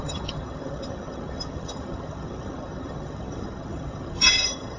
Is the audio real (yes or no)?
no